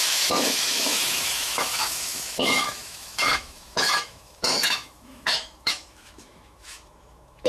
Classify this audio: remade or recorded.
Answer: remade